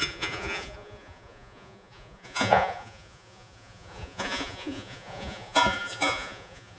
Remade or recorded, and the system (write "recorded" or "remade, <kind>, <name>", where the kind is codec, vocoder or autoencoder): remade, vocoder, Vocos